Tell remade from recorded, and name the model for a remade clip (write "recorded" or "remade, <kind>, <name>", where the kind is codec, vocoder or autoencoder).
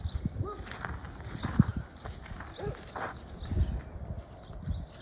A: recorded